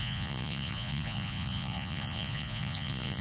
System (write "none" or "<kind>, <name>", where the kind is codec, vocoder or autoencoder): vocoder, Vocos